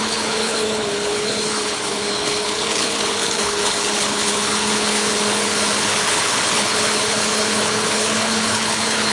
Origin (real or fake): fake